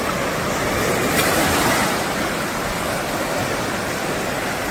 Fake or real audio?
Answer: real